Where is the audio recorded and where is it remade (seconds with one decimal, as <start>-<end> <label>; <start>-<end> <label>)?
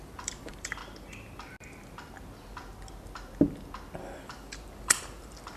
0.0-0.8 remade; 0.8-4.2 recorded; 4.2-5.6 remade